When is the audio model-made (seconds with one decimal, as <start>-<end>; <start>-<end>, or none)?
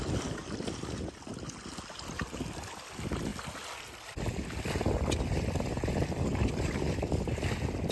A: none